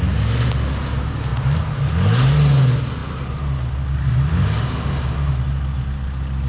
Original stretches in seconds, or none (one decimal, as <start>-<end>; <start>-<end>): 0.0-6.5